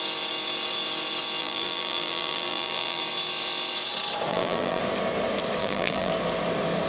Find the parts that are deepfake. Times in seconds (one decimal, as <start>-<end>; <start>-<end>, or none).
1.4-3.0; 4.3-4.8; 5.6-6.1